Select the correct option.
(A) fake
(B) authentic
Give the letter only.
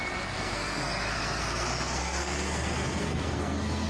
A